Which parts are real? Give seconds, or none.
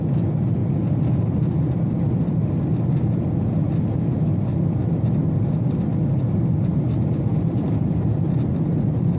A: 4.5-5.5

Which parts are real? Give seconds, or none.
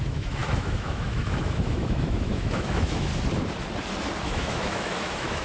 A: 3.1-4.2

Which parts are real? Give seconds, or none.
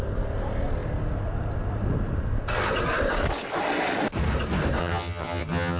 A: 0.0-4.8